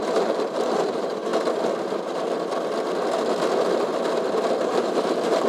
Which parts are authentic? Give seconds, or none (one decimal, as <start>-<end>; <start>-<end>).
1.3-4.6